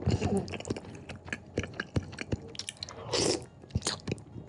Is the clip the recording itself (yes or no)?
yes